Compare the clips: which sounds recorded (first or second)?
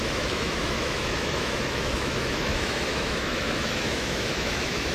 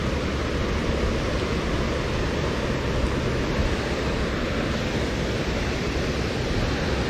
second